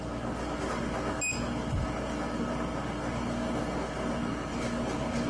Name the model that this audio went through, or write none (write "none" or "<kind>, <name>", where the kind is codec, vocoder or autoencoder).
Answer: none